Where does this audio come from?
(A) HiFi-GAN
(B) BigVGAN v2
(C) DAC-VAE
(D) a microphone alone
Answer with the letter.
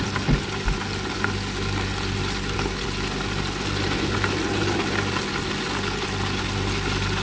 D